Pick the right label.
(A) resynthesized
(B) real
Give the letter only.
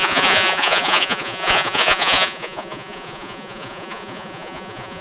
A